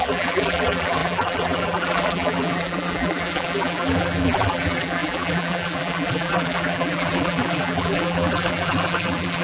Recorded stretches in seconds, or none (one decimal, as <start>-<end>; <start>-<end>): none